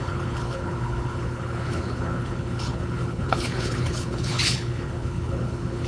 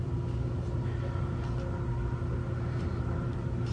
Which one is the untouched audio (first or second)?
second